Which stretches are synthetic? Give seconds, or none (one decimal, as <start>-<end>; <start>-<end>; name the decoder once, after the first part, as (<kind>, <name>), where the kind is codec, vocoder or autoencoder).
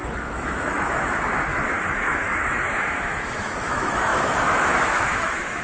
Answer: 0.0-5.6 (autoencoder, DAC-VAE)